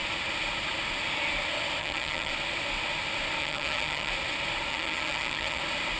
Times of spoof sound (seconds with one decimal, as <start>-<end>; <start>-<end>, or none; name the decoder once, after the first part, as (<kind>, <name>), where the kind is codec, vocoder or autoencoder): 1.8-2.3 (vocoder, HiFi-GAN); 3.4-4.1; 4.7-5.6